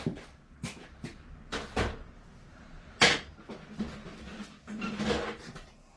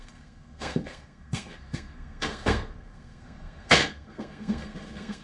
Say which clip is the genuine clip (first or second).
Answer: first